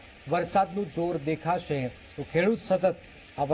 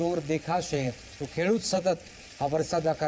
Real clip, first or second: first